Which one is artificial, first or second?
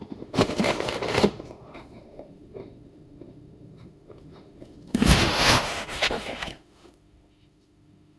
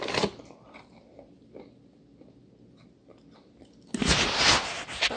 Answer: first